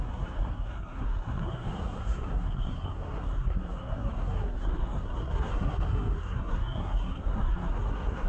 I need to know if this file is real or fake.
fake